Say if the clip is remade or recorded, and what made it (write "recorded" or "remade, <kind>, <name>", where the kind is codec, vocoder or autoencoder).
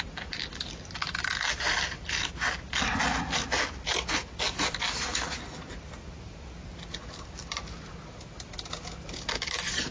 recorded